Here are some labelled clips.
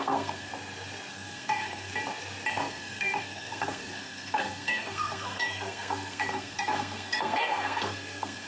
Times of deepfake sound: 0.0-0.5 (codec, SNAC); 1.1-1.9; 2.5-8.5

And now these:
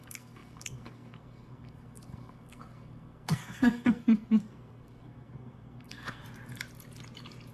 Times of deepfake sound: 0.0-6.2 (codec, SNAC)

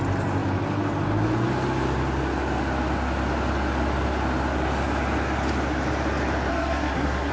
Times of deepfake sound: 6.5-7.3 (codec, SNAC)

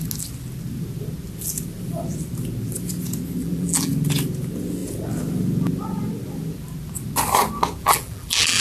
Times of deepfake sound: 3.4-3.9 (vocoder, BigVGAN v2); 7.8-8.6